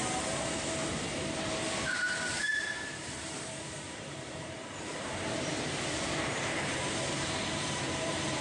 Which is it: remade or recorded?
remade